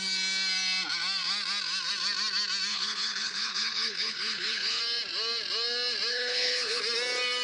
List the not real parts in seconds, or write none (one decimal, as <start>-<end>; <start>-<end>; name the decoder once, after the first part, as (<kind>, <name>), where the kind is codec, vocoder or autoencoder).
2.7-4.8 (codec, HILCodec); 6.1-6.8